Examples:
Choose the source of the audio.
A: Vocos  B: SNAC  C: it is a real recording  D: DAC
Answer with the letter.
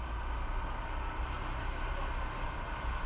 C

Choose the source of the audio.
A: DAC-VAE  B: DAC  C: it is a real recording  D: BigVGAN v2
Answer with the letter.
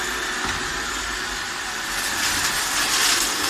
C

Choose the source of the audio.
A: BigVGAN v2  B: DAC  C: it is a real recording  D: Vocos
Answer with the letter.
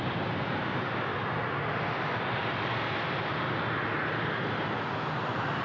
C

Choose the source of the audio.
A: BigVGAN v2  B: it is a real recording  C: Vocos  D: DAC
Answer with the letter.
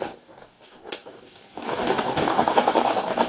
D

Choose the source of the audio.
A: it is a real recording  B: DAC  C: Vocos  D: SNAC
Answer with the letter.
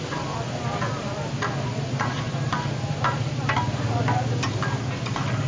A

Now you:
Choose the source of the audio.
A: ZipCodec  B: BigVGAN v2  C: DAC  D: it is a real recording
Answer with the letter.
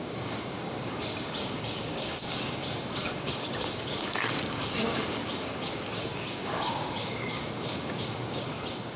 C